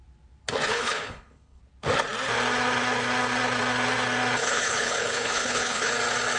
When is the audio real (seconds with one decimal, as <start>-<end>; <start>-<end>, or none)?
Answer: 0.0-0.7; 1.6-4.4; 5.9-6.4